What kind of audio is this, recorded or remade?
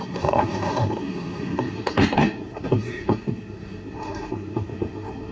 remade